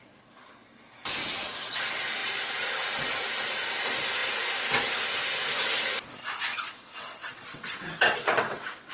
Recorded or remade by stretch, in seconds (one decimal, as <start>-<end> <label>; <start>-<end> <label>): 0.0-1.2 recorded; 1.2-1.8 remade; 1.8-6.5 recorded; 6.5-8.9 remade